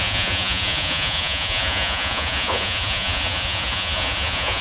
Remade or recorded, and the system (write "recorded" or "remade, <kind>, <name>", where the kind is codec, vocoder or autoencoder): remade, vocoder, Vocos